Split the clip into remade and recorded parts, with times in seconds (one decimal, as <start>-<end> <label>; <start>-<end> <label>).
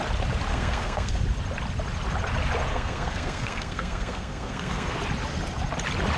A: 0.0-0.5 recorded; 0.5-1.2 remade; 1.2-2.7 recorded; 2.7-5.0 remade; 5.0-6.2 recorded